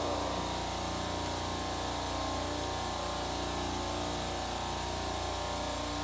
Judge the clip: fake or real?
real